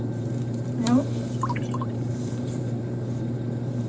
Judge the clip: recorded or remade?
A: remade